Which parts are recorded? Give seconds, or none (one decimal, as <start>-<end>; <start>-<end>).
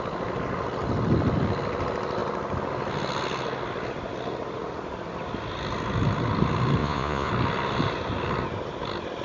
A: 0.0-6.8; 7.3-9.2